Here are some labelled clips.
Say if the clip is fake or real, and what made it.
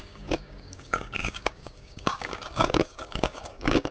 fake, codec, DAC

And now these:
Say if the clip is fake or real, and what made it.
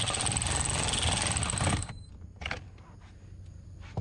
real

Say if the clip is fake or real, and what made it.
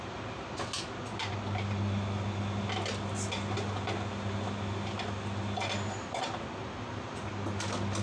real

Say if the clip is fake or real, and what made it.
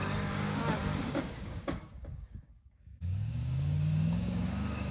fake, codec, DAC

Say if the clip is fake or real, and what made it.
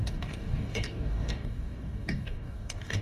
fake, codec, DAC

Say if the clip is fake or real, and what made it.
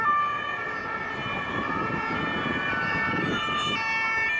real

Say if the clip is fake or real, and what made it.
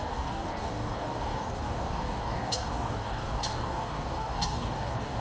fake, codec, DAC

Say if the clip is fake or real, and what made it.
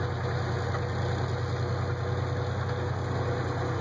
real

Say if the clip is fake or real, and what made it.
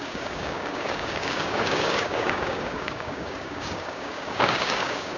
fake, codec, DAC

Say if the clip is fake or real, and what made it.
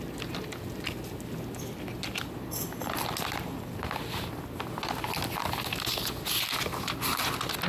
real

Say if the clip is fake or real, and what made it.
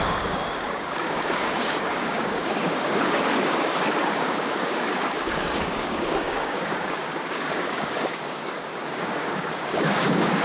fake, codec, DAC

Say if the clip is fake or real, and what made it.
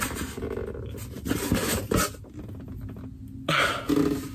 real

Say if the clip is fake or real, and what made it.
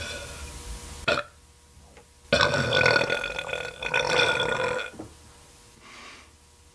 real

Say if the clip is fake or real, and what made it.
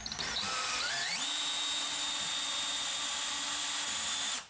real